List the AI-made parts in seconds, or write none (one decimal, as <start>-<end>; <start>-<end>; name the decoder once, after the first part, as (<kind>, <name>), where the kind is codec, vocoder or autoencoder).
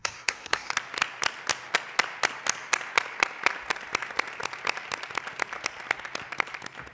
0.0-0.7 (codec, SNAC)